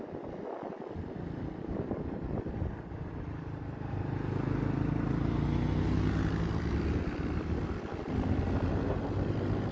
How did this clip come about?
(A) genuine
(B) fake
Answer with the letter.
A